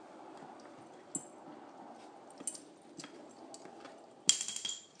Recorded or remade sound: recorded